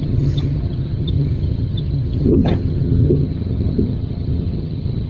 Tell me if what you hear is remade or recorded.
remade